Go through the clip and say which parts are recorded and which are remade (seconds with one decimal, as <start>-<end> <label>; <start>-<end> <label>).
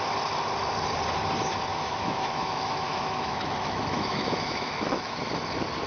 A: 0.0-1.7 recorded; 1.7-5.2 remade; 5.2-5.9 recorded